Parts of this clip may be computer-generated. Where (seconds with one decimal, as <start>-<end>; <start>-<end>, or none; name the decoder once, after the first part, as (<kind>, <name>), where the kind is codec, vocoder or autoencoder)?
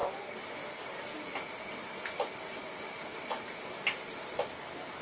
none